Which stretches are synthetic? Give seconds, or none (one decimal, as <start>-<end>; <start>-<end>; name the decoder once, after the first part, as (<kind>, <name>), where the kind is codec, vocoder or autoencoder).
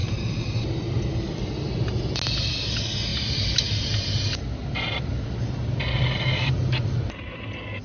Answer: 0.0-0.9 (vocoder, BigVGAN v2)